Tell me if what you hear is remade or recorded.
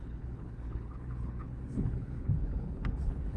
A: remade